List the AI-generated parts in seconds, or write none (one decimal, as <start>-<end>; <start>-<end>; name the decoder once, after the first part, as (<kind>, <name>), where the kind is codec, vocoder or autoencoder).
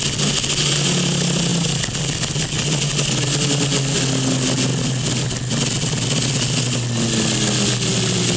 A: none